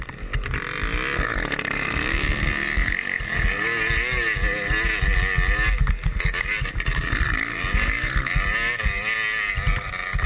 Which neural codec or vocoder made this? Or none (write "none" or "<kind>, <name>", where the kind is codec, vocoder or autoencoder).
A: none